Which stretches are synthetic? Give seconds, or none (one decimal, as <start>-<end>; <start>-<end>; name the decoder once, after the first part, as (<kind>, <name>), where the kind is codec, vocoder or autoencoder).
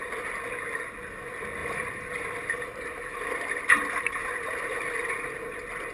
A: 1.6-5.1 (vocoder, BigVGAN v2)